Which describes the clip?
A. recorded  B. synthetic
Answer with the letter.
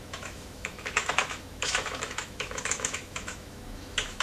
B